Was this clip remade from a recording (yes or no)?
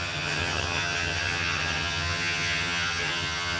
yes